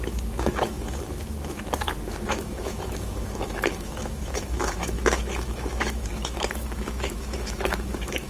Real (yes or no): no